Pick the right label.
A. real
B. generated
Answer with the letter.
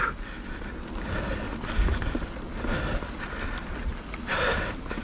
A